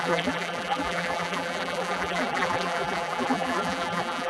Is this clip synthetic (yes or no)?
yes